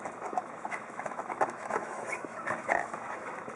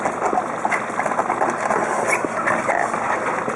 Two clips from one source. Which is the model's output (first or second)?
first